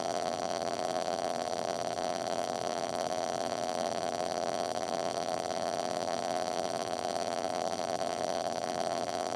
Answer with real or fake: fake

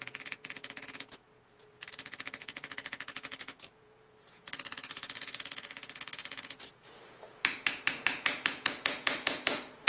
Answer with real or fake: fake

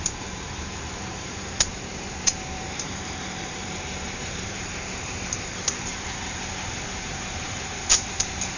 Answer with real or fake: fake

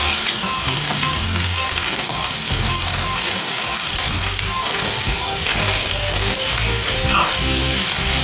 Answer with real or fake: fake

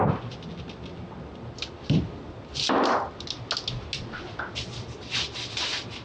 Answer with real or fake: real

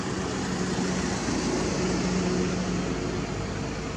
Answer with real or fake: real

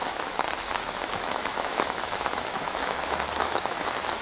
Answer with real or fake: fake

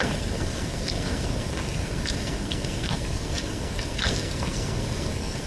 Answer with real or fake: fake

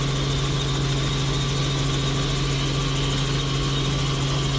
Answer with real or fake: real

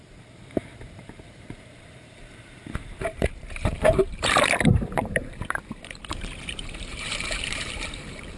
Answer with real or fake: fake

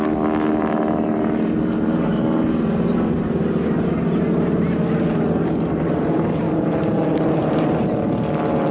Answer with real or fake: real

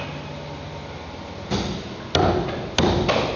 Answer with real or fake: real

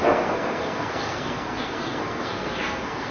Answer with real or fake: fake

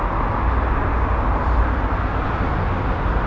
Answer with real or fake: real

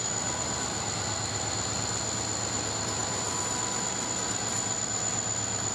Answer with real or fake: real